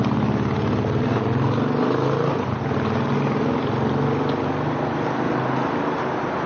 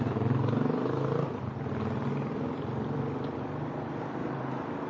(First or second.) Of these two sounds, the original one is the first